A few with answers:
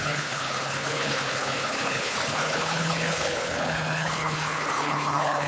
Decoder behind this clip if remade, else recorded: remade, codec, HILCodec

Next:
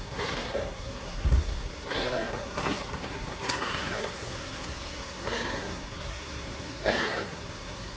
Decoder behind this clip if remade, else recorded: remade, codec, SNAC